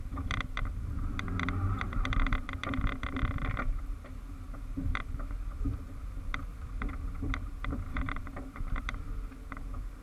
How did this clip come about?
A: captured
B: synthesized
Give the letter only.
B